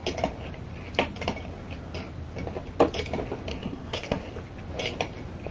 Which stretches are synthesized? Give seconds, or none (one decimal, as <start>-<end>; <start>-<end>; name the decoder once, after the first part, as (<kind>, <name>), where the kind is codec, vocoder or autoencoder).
3.5-4.3 (codec, SNAC)